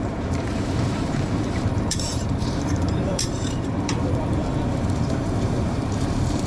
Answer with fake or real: fake